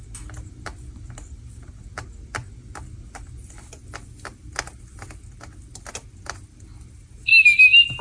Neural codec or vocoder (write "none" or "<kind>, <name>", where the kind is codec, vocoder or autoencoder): none